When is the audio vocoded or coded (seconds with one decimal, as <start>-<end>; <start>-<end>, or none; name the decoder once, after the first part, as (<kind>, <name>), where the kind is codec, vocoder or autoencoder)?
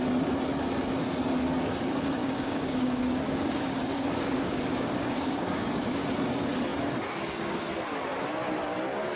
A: 2.2-6.0 (codec, DAC)